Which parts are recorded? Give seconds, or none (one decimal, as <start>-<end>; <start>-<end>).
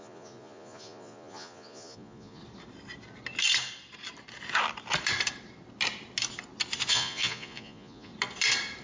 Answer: 2.4-6.9; 8.1-8.8